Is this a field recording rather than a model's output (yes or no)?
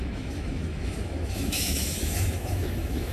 no